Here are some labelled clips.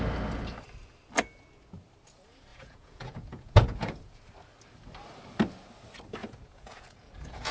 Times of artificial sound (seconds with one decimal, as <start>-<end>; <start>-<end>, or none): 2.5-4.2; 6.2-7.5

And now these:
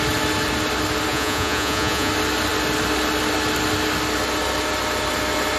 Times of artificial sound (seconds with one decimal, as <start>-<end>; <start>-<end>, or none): 1.1-2.1

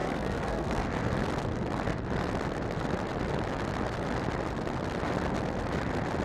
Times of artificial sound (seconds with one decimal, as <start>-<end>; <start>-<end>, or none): 0.0-0.9

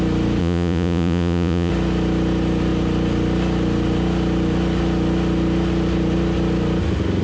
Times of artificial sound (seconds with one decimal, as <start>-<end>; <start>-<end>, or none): 0.4-1.7

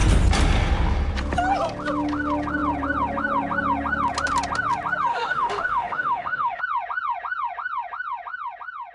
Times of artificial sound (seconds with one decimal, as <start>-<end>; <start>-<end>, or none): 5.1-6.6